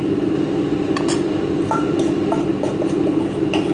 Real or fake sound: real